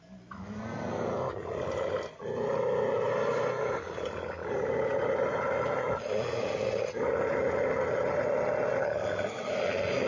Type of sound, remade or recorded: recorded